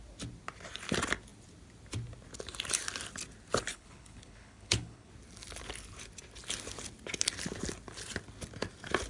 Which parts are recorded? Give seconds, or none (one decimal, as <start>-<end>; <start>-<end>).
0.0-3.7; 5.1-9.1